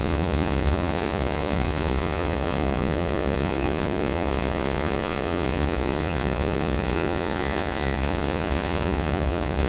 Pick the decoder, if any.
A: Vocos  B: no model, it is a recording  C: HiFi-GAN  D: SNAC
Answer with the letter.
A